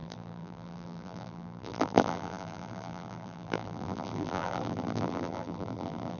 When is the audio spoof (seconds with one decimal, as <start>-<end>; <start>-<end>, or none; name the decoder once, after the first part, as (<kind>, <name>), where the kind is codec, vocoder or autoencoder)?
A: 0.0-6.2 (vocoder, BigVGAN v2)